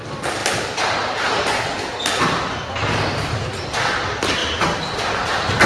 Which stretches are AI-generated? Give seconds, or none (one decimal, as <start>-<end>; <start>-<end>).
none